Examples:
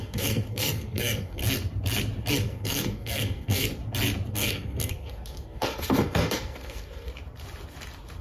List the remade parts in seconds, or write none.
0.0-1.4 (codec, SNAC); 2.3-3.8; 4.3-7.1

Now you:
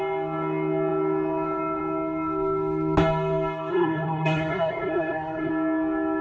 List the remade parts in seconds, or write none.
3.7-5.5 (codec, SNAC)

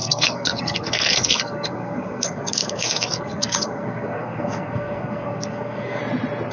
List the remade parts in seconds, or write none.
0.0-6.0 (codec, SNAC)

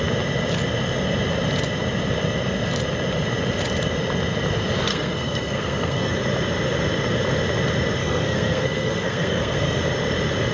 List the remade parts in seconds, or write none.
4.9-6.1 (codec, SNAC); 8.0-9.8

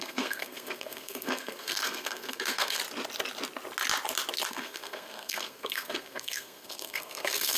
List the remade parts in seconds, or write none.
0.0-2.8 (codec, SNAC); 4.5-7.6

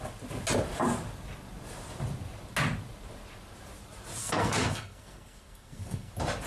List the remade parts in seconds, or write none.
4.2-6.1 (codec, SNAC)

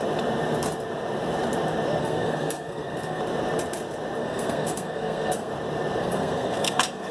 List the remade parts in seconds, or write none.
2.0-3.2 (codec, SNAC); 4.2-5.5; 6.0-7.1